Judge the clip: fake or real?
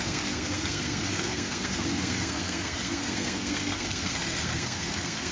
fake